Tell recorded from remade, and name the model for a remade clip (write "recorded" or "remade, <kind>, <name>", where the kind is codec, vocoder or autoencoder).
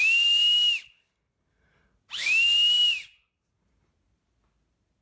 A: recorded